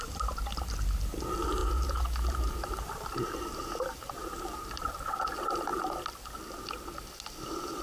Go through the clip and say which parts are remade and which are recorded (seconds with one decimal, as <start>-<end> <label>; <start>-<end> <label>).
0.0-7.8 recorded